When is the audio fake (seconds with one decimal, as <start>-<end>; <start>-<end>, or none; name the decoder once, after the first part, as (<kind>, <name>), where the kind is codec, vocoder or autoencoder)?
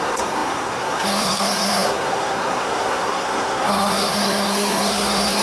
0.0-5.4 (codec, SNAC)